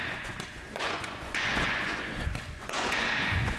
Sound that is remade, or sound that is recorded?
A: remade